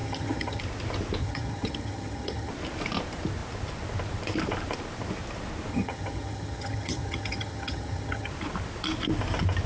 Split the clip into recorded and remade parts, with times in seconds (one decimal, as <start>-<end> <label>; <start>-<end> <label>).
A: 0.0-0.6 remade; 0.6-1.2 recorded; 1.2-2.5 remade; 2.5-5.7 recorded; 5.7-8.3 remade; 8.3-9.7 recorded